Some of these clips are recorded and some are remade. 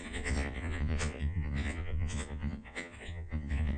remade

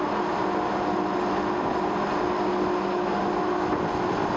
recorded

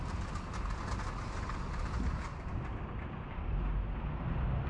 recorded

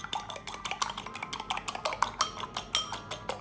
recorded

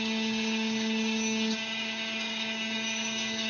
remade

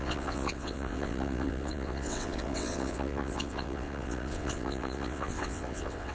remade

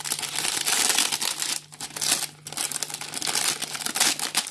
recorded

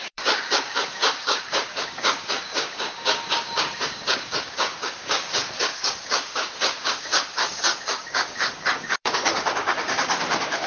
remade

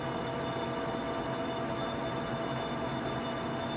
recorded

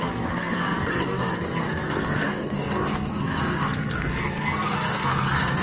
remade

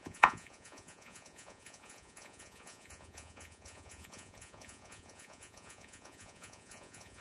remade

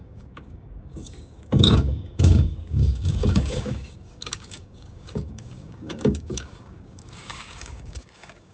remade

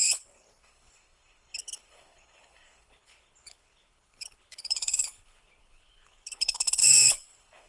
remade